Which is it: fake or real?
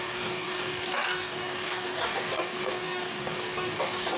fake